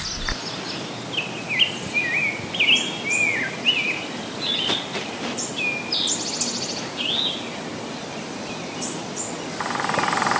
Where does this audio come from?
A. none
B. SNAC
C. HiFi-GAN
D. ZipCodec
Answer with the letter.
A